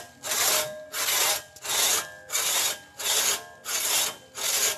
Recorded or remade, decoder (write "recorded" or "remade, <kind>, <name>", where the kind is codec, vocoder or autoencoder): recorded